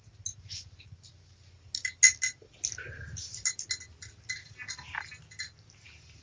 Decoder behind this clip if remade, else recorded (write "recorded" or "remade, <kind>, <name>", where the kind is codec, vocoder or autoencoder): recorded